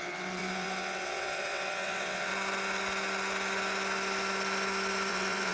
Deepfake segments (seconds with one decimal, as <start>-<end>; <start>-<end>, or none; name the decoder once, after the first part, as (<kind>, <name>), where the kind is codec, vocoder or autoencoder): 0.0-2.3 (vocoder, WaveNeXt); 5.1-5.5